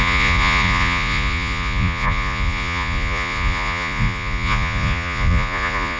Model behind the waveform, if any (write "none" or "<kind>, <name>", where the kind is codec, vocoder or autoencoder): vocoder, Vocos